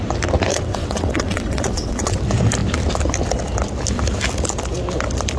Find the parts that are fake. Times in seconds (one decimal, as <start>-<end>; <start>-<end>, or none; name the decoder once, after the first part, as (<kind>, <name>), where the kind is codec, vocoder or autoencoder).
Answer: 0.5-2.2 (vocoder, WaveNeXt)